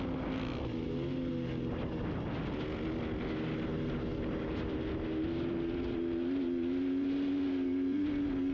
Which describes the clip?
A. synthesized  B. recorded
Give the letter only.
B